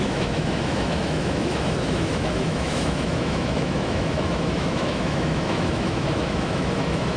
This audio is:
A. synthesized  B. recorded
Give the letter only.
A